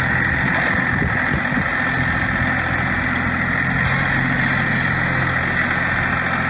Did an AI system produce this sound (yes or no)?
no